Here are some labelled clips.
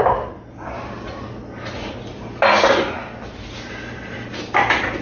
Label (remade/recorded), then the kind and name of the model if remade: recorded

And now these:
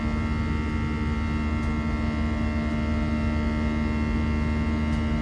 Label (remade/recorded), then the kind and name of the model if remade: recorded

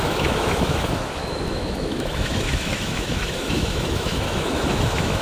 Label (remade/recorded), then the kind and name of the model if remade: remade, autoencoder, DAC-VAE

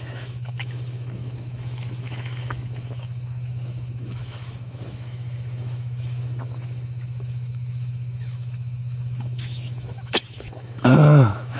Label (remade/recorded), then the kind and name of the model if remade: remade, autoencoder, DAC-VAE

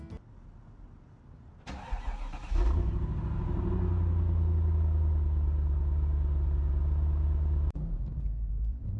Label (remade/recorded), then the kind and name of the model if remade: recorded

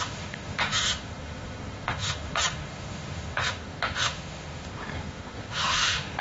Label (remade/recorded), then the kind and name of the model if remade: remade, autoencoder, DAC-VAE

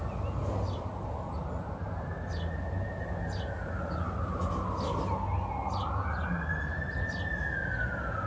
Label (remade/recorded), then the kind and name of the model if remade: recorded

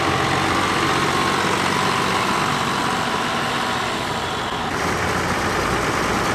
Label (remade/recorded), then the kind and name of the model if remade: recorded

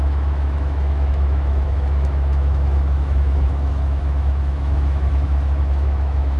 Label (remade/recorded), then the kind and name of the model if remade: remade, autoencoder, DAC-VAE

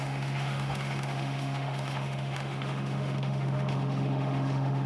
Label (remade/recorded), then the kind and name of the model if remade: remade, autoencoder, DAC-VAE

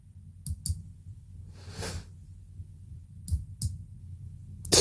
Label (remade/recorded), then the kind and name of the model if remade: recorded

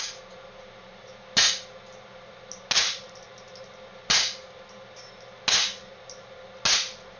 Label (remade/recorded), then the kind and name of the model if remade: recorded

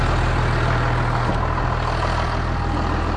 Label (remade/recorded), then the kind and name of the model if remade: recorded